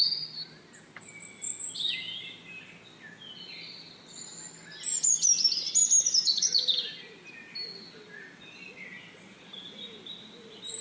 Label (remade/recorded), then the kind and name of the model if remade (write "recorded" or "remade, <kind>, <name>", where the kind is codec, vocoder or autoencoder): recorded